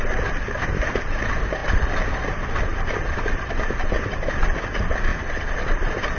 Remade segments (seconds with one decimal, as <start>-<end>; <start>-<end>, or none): 2.7-3.9; 5.1-6.2